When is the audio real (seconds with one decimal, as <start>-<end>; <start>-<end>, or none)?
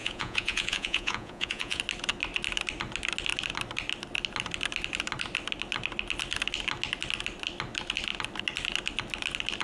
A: 1.8-9.6